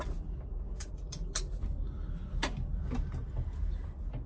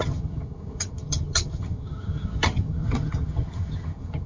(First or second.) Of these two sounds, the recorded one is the first